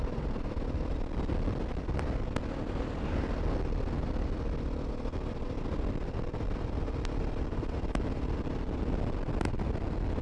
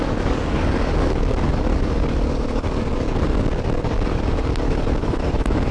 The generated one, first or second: second